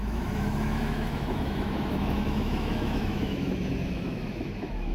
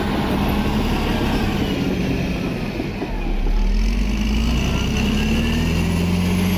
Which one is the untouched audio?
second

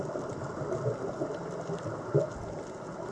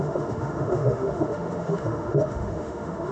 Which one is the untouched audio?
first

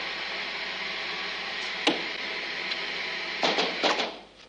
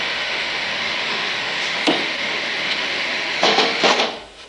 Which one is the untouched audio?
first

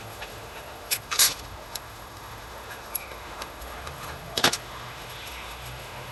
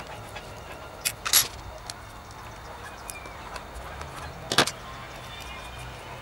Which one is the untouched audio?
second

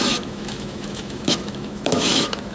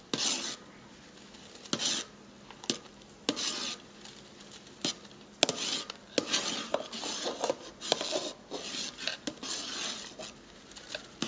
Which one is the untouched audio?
second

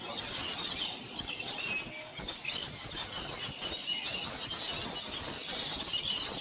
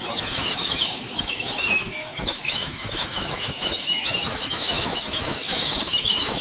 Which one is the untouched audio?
first